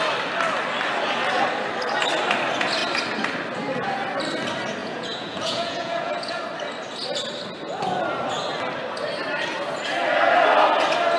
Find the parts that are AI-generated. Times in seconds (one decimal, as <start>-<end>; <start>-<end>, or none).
4.8-6.4